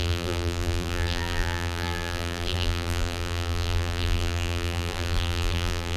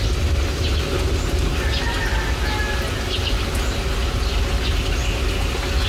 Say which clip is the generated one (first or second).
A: first